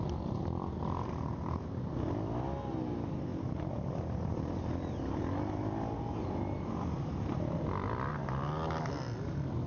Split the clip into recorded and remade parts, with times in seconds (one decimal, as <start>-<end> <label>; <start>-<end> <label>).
0.0-9.7 recorded

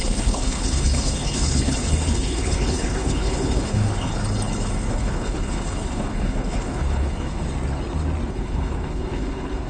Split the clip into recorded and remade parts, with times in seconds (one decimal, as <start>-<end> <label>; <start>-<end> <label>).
0.0-4.1 remade; 4.1-4.9 recorded; 4.9-7.4 remade; 7.4-8.3 recorded; 8.3-9.7 remade

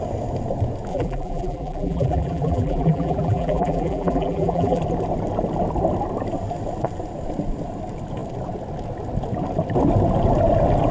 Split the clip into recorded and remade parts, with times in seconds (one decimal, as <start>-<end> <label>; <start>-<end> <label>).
0.0-0.9 recorded; 0.9-4.8 remade; 4.8-10.9 recorded

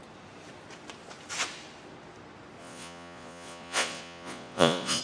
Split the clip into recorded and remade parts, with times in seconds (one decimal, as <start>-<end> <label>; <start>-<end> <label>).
0.0-2.6 recorded; 2.6-5.0 remade

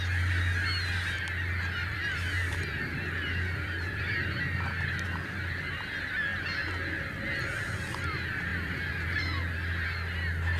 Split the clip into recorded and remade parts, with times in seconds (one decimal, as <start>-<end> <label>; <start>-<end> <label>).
0.0-1.8 recorded; 1.8-4.1 remade; 4.1-8.5 recorded; 8.5-9.2 remade; 9.2-10.6 recorded

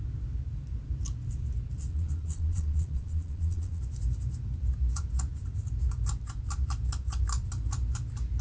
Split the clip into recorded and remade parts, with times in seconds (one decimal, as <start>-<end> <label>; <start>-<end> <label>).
0.0-1.9 recorded; 1.9-3.8 remade; 3.8-8.4 recorded

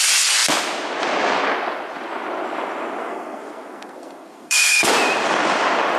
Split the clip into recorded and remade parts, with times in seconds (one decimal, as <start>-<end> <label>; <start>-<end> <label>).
0.0-3.0 recorded; 3.0-4.9 remade; 4.9-6.0 recorded